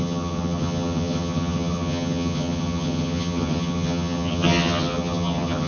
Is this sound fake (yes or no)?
yes